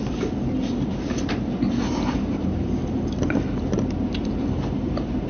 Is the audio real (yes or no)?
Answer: yes